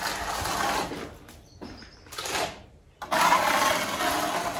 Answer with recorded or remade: recorded